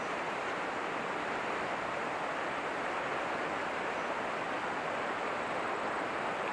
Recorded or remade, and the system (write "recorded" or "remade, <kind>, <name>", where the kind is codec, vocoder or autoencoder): remade, vocoder, BigVGAN v2